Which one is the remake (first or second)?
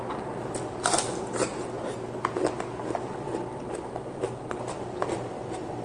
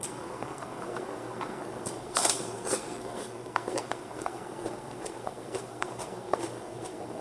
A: second